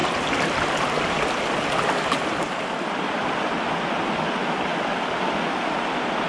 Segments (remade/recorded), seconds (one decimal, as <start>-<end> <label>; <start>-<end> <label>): 0.0-6.3 recorded